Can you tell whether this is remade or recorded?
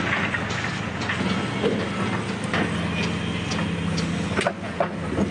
recorded